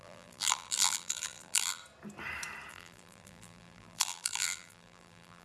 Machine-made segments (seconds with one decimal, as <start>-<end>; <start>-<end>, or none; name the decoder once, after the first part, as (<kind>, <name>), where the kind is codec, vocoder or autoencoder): 0.0-1.8 (vocoder, BigVGAN v2); 2.7-5.4